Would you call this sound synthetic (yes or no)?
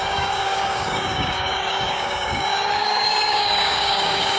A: yes